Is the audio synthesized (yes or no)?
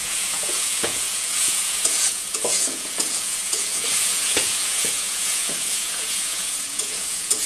yes